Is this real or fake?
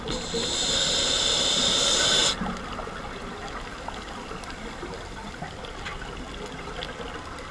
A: real